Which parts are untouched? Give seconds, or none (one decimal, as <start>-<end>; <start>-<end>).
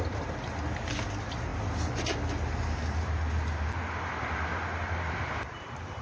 0.0-6.0